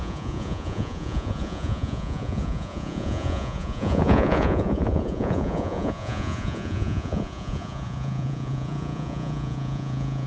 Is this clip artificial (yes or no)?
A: yes